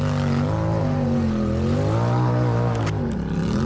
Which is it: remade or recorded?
recorded